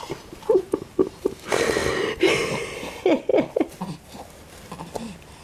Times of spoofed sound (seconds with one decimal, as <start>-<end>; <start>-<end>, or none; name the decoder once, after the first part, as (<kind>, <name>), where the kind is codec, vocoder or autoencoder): none